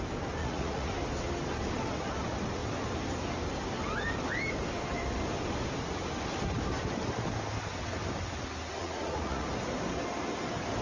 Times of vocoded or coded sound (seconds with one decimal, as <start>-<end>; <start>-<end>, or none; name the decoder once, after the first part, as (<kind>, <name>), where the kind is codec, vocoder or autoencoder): 0.4-0.9 (vocoder, Vocos); 8.8-9.5